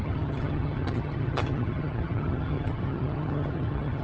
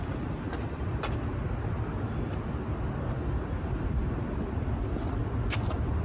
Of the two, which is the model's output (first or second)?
first